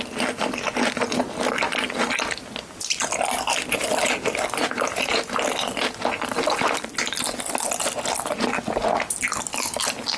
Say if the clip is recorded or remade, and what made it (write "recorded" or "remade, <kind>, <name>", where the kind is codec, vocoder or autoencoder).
recorded